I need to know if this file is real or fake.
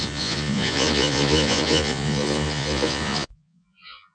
fake